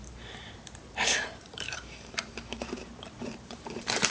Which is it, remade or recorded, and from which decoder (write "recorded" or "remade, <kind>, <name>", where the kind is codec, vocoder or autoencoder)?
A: remade, vocoder, BigVGAN v2